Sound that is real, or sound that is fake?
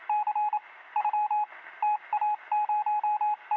real